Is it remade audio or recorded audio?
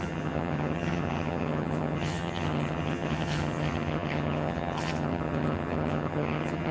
remade